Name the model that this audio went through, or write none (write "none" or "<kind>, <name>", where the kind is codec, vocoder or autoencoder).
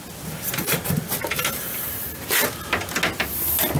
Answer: none